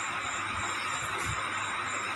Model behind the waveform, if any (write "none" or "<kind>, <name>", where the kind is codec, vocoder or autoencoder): none